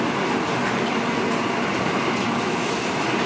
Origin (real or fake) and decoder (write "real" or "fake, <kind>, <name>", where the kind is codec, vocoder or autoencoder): real